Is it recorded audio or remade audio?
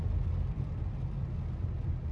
recorded